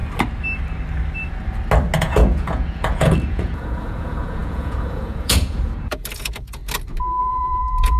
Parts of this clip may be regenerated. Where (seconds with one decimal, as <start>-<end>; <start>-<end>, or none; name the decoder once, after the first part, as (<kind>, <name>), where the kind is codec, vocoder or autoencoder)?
2.0-6.6 (vocoder, Vocos); 7.2-8.0